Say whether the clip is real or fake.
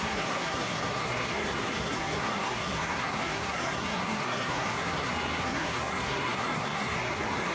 fake